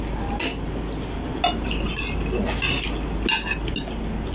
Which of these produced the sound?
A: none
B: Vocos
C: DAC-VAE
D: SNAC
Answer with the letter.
A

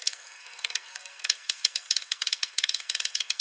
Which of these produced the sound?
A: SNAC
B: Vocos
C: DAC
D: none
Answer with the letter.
A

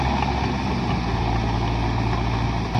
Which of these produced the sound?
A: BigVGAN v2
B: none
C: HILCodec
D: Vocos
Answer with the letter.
B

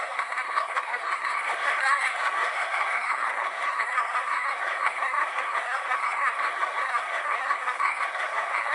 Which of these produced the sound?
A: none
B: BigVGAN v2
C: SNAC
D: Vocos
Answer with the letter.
C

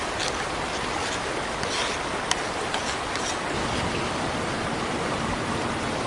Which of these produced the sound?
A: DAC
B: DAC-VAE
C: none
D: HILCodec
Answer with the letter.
C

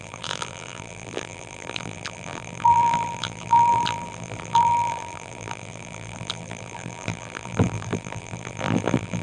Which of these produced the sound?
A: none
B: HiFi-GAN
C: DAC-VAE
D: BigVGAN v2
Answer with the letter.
D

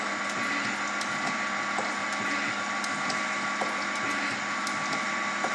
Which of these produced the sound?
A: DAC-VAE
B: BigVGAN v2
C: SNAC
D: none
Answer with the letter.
D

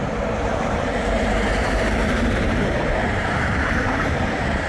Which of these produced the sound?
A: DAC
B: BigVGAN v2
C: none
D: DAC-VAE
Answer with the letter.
B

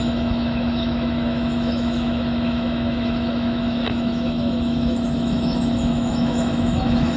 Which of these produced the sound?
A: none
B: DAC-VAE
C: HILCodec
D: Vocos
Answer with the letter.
B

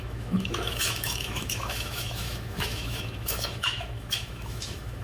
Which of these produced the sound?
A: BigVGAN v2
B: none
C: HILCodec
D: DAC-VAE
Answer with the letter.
D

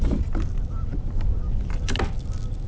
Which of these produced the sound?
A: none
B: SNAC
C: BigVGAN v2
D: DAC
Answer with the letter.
A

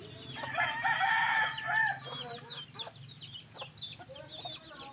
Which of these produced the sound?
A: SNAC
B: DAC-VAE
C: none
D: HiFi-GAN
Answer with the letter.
C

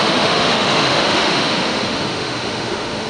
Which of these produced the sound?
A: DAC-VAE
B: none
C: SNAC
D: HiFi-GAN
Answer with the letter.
A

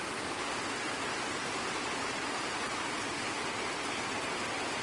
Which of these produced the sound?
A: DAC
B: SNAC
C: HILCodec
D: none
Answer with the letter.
D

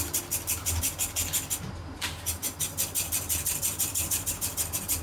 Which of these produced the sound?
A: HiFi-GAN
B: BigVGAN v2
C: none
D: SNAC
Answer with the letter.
C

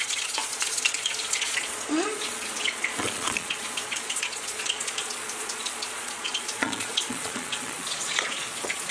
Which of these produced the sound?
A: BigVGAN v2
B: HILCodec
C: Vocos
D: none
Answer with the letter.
C